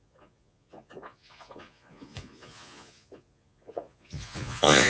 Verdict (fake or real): fake